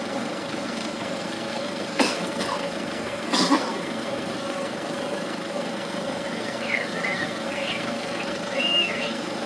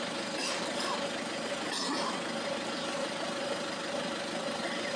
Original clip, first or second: second